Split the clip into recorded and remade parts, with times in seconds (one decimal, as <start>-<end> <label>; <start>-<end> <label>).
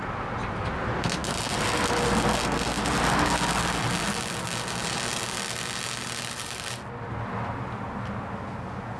0.0-9.0 recorded